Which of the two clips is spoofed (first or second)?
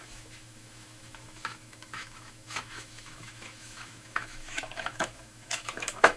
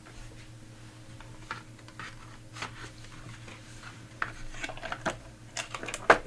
first